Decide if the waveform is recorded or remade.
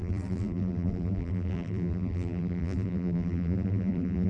remade